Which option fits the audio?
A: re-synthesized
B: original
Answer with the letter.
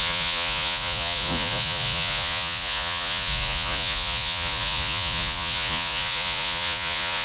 A